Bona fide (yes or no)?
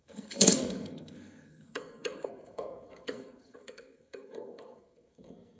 no